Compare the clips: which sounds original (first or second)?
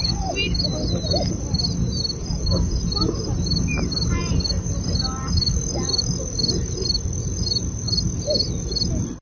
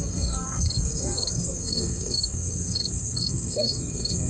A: first